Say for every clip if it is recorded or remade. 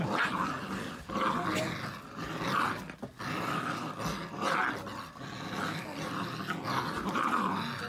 recorded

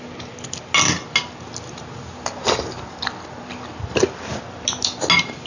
recorded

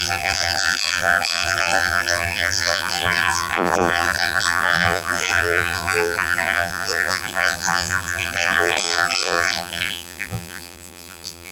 remade